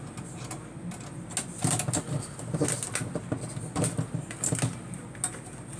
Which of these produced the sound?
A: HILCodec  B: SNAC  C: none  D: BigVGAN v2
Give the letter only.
C